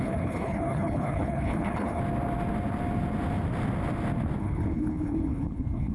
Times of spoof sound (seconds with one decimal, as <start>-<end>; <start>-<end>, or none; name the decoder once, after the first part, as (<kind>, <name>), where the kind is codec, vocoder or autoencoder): 0.0-2.0 (codec, HILCodec); 4.4-5.9